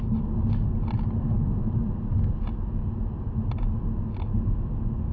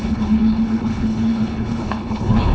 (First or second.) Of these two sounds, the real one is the first